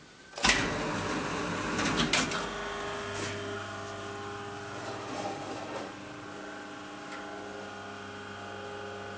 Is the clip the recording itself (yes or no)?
yes